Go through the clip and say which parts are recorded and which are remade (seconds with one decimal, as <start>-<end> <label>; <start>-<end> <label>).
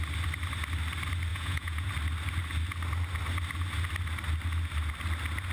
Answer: 0.0-1.3 recorded; 1.3-1.9 remade; 1.9-5.5 recorded